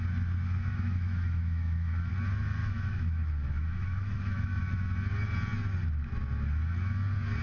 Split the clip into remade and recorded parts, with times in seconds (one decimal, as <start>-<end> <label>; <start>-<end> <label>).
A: 0.0-0.7 recorded; 0.7-2.1 remade; 2.1-2.6 recorded; 2.6-4.6 remade; 4.6-7.4 recorded